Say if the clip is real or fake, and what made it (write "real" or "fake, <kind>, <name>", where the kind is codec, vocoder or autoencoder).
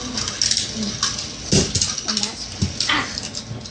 real